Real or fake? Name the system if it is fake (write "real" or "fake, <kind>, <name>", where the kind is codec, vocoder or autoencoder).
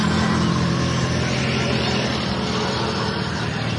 real